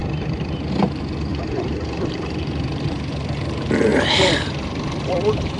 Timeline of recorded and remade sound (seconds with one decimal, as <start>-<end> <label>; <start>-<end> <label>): 0.0-0.9 remade; 0.9-1.3 recorded; 1.3-2.9 remade; 2.9-3.9 recorded; 3.9-5.6 remade